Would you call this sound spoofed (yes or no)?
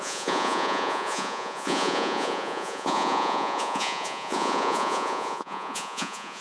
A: yes